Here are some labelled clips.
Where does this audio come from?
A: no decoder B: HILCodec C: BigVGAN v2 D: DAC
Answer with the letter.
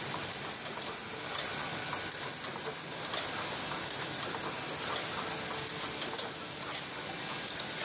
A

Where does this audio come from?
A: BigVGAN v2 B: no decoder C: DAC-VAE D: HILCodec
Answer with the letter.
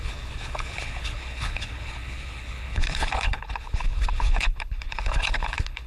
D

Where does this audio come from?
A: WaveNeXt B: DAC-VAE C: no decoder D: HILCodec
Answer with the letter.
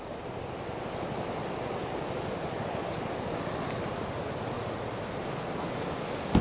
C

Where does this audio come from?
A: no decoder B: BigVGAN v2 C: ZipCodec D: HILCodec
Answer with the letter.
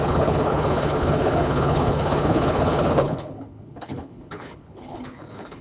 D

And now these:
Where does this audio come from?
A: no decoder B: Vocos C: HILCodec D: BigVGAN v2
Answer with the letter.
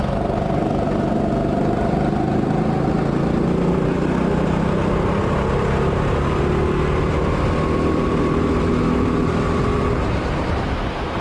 A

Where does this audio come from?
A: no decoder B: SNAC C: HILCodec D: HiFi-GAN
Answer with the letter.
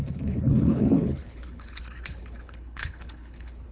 C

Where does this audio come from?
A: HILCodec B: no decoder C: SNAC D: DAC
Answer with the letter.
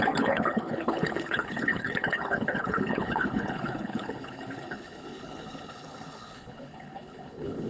A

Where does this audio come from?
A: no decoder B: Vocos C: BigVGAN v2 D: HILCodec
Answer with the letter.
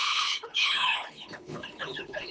D